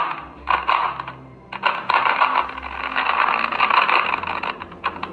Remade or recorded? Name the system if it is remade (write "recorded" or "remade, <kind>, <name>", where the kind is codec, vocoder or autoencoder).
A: recorded